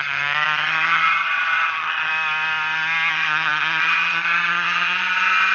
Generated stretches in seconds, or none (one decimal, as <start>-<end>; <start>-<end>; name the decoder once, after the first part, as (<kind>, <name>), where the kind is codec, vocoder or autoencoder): 0.0-2.1 (vocoder, HiFi-GAN); 3.1-5.5